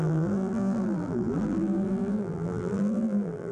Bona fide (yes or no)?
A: no